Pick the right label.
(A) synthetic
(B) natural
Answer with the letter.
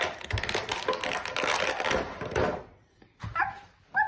B